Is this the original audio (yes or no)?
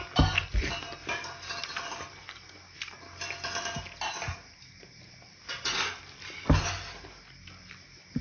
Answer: yes